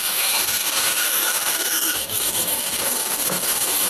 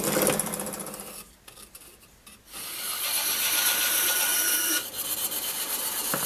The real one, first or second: second